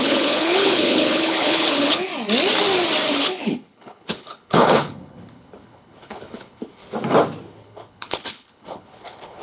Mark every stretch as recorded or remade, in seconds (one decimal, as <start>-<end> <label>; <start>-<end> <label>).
0.0-2.1 remade; 2.1-3.1 recorded; 3.1-6.8 remade; 6.8-7.4 recorded; 7.4-9.4 remade

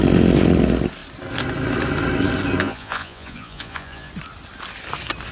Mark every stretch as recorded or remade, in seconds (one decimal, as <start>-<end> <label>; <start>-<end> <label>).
0.0-2.6 recorded; 2.6-4.1 remade; 4.1-5.3 recorded